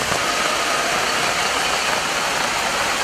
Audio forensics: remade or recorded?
recorded